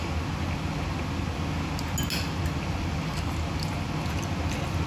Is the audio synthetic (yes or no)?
no